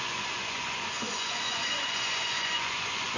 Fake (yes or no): yes